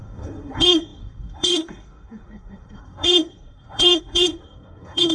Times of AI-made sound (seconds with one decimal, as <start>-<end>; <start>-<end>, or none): 0.0-5.1